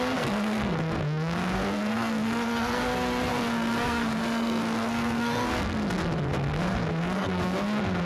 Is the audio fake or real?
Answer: fake